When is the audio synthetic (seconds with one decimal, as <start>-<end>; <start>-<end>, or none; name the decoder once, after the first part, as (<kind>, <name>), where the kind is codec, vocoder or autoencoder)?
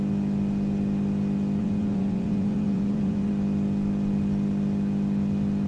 1.6-3.3 (vocoder, Vocos)